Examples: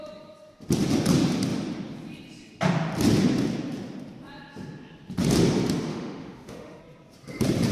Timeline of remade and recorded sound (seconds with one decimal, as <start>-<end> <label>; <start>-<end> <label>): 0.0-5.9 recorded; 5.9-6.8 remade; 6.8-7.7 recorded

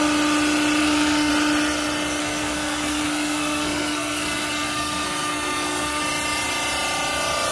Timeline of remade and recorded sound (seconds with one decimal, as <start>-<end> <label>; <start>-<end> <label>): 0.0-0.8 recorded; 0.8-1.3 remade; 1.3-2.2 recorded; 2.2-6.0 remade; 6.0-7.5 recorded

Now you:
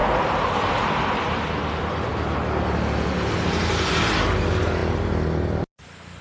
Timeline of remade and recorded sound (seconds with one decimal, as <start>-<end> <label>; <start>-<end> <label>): 0.0-6.2 recorded

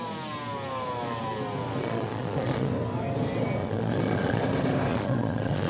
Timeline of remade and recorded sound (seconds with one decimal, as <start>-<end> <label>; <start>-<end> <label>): 0.0-1.8 recorded; 1.8-2.7 remade; 2.7-3.6 recorded; 3.6-4.4 remade; 4.4-4.9 recorded; 4.9-5.7 remade

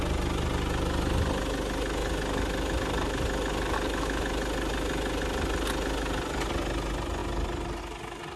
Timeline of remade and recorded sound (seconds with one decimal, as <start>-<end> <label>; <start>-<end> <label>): 0.0-8.4 recorded

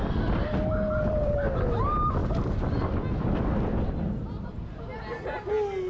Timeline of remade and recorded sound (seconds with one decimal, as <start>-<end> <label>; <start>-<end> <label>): 0.0-5.9 recorded

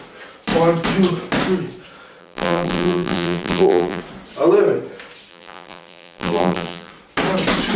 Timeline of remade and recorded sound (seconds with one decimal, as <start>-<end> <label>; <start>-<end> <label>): 0.0-2.2 recorded; 2.2-4.0 remade; 4.0-5.3 recorded; 5.3-6.9 remade; 6.9-7.8 recorded

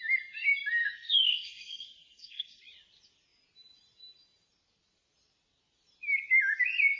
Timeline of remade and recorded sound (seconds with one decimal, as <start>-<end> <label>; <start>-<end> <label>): 0.0-0.8 recorded; 0.8-2.6 remade; 2.6-7.0 recorded